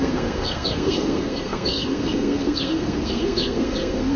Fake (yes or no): yes